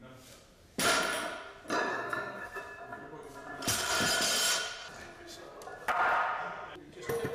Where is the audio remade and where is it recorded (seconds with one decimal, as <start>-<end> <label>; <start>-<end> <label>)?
0.0-1.9 recorded; 1.9-2.6 remade; 2.6-7.3 recorded